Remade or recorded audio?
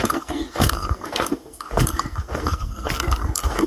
remade